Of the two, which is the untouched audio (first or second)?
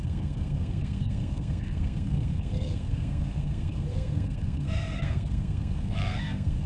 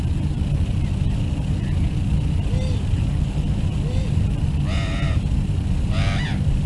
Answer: second